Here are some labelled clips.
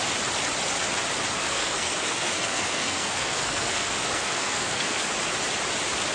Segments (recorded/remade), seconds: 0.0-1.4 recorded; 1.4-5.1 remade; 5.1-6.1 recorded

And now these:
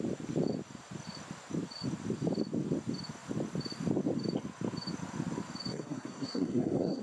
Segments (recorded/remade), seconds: 0.0-5.7 recorded; 5.7-7.0 remade

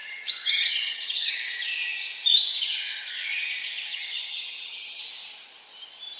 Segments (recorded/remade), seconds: 0.0-1.4 remade; 1.4-3.9 recorded; 3.9-5.0 remade; 5.0-6.2 recorded

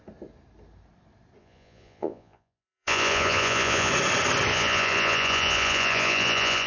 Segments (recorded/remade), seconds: 0.0-1.4 recorded; 1.4-3.9 remade; 3.9-4.5 recorded; 4.5-6.7 remade

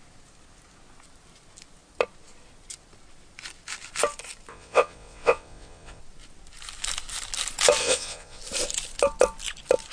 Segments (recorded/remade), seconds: 0.0-4.5 recorded; 4.5-6.0 remade; 6.0-7.8 recorded; 7.8-8.4 remade; 8.4-9.9 recorded

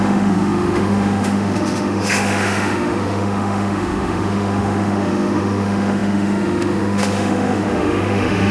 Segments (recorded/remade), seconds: 0.0-8.5 remade

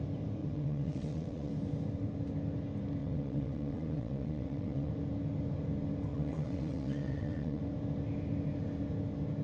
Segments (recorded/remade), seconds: 0.0-0.4 recorded; 0.4-1.5 remade; 1.5-3.0 recorded; 3.0-4.9 remade; 4.9-6.1 recorded; 6.1-7.6 remade; 7.6-9.4 recorded